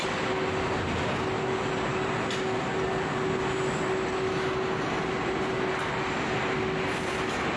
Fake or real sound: real